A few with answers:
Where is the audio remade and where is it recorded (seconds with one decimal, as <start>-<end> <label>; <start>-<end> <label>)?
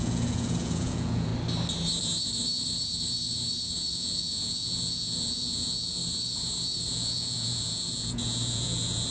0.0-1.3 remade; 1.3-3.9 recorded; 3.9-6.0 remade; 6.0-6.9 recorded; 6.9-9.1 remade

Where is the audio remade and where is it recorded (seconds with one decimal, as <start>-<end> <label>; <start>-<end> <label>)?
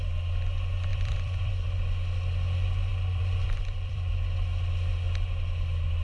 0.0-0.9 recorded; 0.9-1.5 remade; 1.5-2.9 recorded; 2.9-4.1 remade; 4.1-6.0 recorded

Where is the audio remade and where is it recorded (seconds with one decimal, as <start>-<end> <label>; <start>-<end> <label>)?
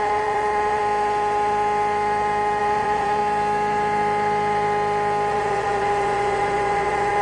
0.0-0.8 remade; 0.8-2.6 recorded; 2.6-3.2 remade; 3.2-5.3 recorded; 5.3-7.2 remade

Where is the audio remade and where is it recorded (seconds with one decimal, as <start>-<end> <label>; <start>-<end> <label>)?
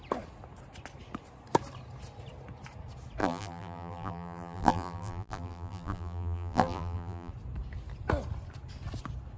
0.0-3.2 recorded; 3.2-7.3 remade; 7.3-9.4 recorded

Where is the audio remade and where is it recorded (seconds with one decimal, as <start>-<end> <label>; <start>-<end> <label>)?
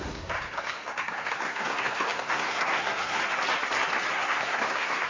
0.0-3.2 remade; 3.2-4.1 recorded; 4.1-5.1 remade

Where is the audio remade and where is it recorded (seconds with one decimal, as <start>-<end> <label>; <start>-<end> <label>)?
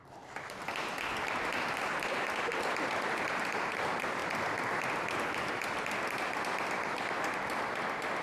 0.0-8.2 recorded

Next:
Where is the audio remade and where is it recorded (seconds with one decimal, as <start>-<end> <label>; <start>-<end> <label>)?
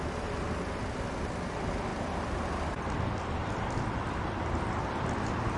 0.0-1.9 recorded; 1.9-5.6 remade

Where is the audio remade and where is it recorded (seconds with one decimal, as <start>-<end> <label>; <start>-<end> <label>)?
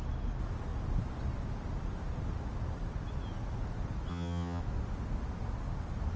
0.0-4.1 recorded; 4.1-4.6 remade; 4.6-6.2 recorded